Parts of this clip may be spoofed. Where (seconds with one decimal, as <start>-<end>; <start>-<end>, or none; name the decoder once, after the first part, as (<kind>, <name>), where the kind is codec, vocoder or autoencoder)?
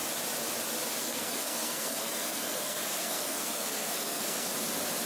1.0-4.5 (codec, SNAC)